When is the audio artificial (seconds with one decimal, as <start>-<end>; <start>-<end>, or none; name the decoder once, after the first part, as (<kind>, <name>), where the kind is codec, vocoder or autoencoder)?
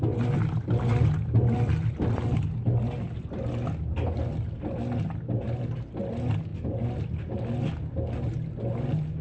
none